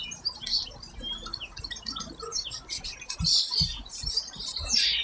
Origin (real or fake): real